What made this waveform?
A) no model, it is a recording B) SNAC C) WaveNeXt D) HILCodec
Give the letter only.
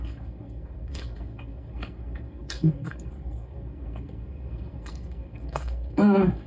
B